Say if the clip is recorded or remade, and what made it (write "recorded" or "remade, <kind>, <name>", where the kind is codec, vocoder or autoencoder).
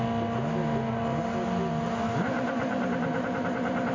recorded